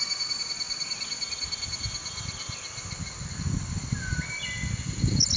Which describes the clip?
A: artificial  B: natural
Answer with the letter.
B